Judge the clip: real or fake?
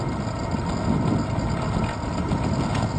real